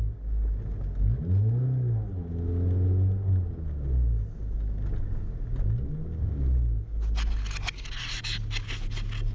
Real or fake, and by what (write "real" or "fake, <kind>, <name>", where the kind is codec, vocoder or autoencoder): real